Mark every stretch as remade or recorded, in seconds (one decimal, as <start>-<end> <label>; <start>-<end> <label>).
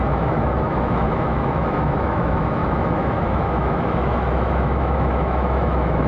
0.0-6.1 remade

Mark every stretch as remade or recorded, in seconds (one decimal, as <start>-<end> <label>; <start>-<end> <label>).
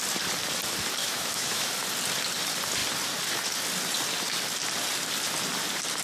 0.0-1.0 recorded; 1.0-1.7 remade; 1.7-6.0 recorded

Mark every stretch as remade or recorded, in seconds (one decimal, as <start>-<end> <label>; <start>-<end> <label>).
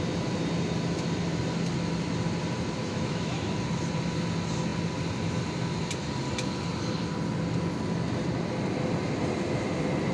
0.0-2.8 recorded; 2.8-3.5 remade; 3.5-10.1 recorded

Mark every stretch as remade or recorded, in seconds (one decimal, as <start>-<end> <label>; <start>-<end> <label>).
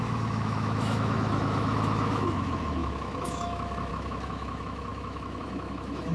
0.0-6.1 remade